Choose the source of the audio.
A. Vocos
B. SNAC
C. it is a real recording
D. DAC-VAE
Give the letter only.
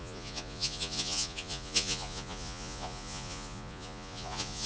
A